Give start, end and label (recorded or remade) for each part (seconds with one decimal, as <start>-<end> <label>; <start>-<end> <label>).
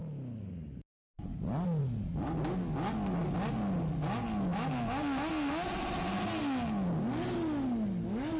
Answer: 0.0-8.4 recorded